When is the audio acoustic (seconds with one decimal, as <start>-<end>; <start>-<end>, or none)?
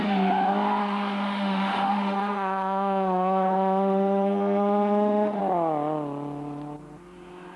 0.0-0.8; 5.4-7.6